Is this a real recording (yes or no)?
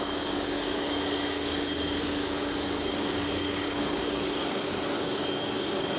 no